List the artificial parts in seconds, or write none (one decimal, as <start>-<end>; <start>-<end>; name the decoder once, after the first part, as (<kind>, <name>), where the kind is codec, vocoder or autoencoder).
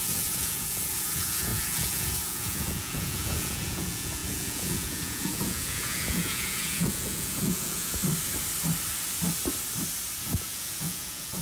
0.0-8.0 (vocoder, Vocos); 10.2-11.4